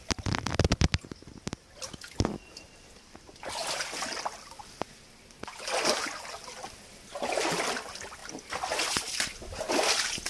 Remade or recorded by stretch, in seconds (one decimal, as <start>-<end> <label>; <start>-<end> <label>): 0.0-10.3 recorded